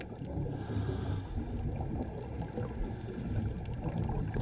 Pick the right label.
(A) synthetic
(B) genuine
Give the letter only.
B